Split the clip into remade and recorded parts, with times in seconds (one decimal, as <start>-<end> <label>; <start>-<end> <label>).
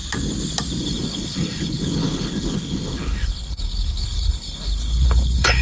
0.0-0.8 recorded; 0.8-5.6 remade